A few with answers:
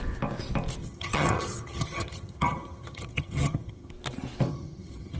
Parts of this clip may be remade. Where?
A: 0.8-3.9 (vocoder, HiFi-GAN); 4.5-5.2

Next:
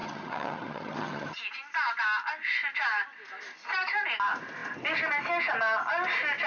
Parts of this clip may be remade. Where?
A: 0.0-1.4 (vocoder, HiFi-GAN)

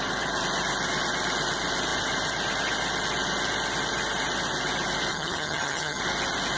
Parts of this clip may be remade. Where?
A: 5.1-6.0 (vocoder, HiFi-GAN)

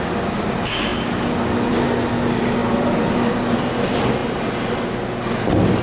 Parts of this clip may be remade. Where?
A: none

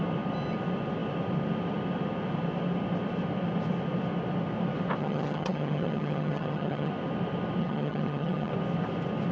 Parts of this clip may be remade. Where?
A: 5.0-6.9 (vocoder, HiFi-GAN); 7.6-8.5

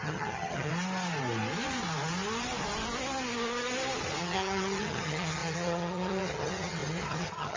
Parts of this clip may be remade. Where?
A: 0.0-0.7 (vocoder, HiFi-GAN); 4.2-7.6

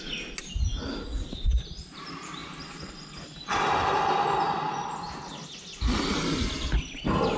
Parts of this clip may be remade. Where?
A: none